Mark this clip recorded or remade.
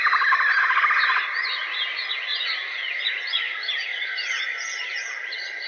recorded